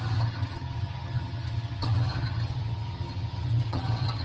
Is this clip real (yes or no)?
no